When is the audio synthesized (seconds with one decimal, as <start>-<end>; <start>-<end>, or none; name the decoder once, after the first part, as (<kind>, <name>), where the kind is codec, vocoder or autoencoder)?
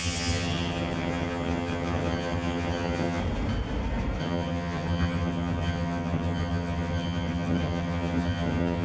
0.0-3.2 (vocoder, HiFi-GAN); 4.2-8.8